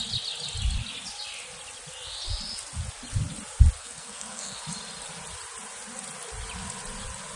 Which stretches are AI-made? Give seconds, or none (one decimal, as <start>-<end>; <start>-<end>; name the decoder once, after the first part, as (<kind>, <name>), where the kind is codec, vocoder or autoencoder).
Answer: 3.8-4.6 (codec, SNAC)